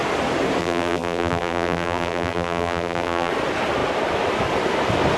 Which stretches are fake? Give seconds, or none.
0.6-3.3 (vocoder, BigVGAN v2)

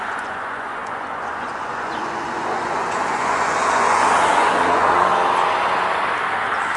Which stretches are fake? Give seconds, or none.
0.0-5.1 (vocoder, Vocos)

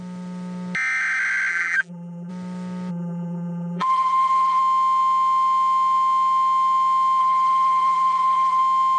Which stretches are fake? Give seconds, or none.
1.5-2.3 (vocoder, BigVGAN v2); 2.9-4.6; 7.2-8.6

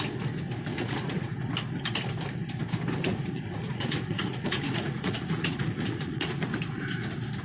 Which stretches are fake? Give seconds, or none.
0.7-1.5 (vocoder, Vocos); 3.1-6.5

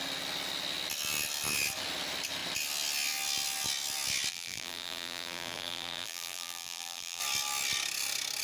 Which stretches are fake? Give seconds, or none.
4.3-7.2 (vocoder, BigVGAN v2)

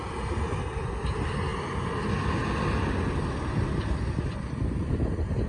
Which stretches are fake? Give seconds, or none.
none

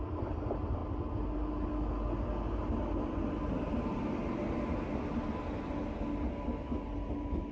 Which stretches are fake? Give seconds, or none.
none